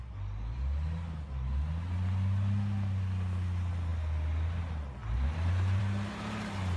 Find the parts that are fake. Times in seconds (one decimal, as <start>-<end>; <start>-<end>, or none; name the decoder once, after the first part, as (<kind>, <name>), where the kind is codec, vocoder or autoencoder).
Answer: none